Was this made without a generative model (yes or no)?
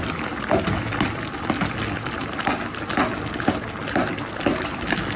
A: yes